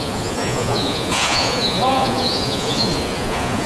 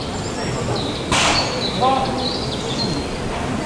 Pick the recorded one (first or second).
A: second